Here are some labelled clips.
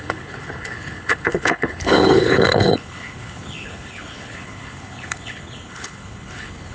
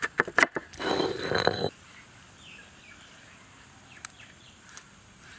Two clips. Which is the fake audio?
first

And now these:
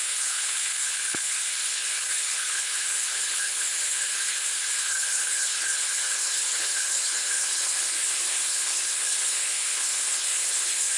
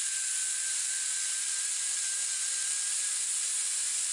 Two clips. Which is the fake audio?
first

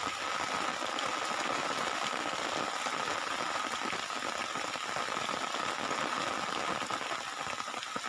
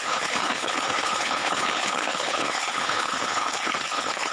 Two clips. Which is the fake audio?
second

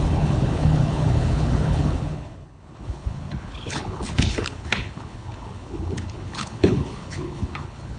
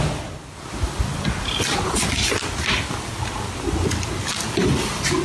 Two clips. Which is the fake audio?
first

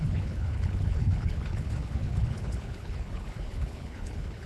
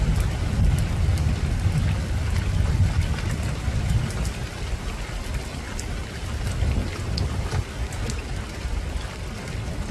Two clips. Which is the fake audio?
first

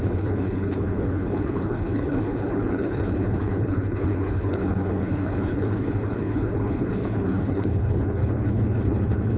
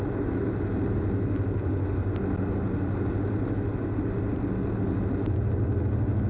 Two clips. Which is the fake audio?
first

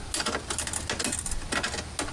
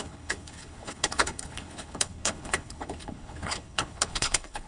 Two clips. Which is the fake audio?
second